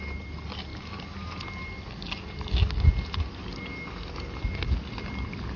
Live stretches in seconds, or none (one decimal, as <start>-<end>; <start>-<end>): 0.0-5.6